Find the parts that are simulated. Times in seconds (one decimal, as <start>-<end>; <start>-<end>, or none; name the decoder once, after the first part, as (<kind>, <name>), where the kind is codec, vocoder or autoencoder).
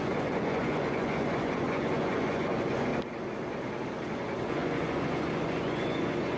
0.0-2.9 (vocoder, Vocos); 4.1-6.4